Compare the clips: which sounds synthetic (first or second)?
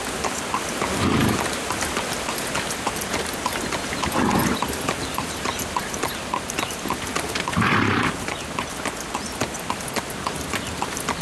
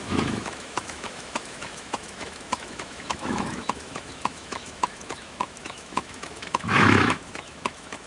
second